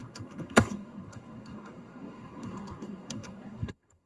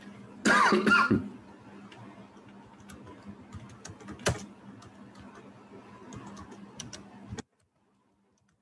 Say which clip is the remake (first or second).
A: first